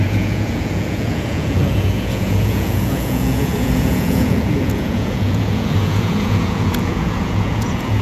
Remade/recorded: remade